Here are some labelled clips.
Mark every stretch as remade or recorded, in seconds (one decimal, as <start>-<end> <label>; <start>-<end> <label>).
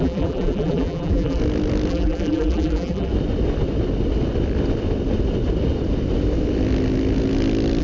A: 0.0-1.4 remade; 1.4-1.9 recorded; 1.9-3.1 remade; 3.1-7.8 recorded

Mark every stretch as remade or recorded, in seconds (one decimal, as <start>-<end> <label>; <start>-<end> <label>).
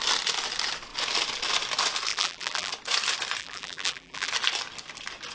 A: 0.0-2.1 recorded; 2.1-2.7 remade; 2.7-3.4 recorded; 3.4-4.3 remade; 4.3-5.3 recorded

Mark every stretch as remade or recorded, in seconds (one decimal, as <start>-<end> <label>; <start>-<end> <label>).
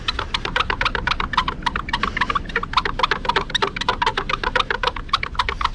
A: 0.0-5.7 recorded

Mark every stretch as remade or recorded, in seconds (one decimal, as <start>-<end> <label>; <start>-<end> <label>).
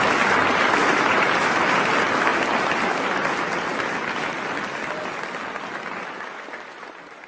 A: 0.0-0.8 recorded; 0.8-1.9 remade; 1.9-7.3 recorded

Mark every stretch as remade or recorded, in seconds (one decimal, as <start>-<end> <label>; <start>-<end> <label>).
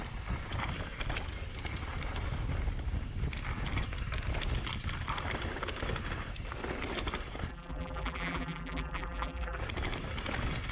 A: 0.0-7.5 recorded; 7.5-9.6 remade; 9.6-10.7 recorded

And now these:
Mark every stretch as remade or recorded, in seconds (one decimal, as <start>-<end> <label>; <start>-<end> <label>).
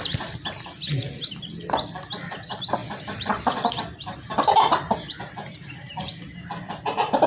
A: 0.0-2.8 recorded; 2.8-7.3 remade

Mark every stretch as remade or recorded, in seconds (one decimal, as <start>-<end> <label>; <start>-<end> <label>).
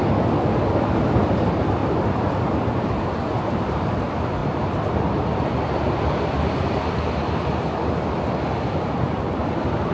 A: 0.0-1.3 recorded; 1.3-1.8 remade; 1.8-2.6 recorded; 2.6-4.4 remade; 4.4-8.3 recorded; 8.3-9.9 remade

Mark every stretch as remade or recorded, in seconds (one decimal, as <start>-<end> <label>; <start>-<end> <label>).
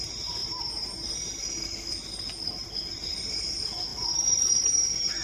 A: 0.0-0.4 recorded; 0.4-3.5 remade; 3.5-3.9 recorded; 3.9-4.5 remade; 4.5-5.2 recorded